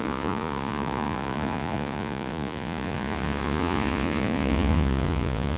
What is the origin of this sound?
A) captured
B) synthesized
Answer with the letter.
B